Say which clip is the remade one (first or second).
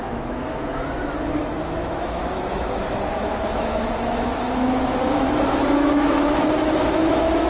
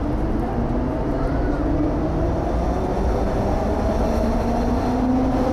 first